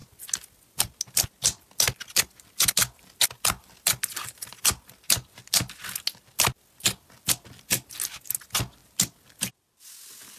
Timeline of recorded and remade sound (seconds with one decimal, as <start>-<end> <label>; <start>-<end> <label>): 0.0-10.4 recorded